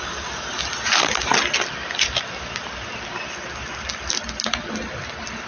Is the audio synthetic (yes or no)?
no